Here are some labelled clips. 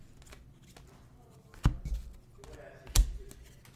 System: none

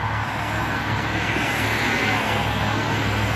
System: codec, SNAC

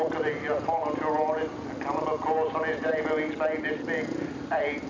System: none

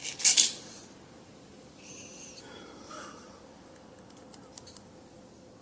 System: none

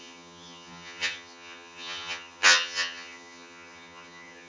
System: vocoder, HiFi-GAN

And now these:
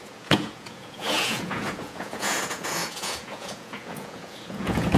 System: vocoder, Vocos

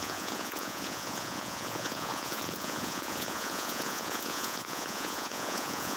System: vocoder, Vocos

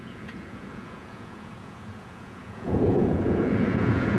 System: vocoder, Vocos